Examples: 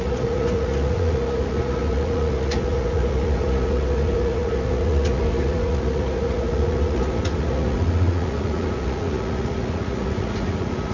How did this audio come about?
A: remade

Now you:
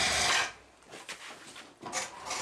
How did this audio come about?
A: recorded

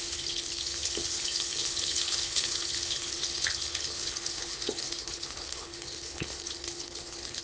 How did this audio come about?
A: remade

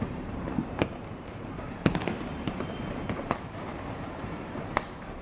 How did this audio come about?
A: remade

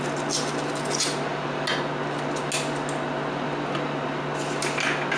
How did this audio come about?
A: recorded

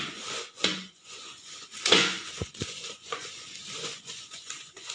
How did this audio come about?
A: remade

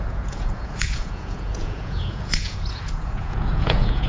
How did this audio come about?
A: remade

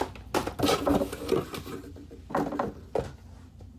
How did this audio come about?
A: recorded